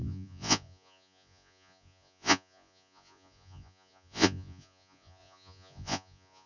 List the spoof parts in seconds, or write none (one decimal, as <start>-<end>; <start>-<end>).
0.0-6.5